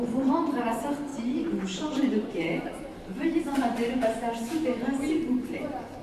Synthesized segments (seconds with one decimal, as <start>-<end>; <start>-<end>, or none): 0.0-6.0